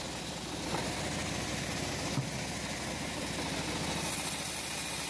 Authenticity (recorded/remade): recorded